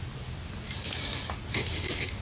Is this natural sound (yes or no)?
yes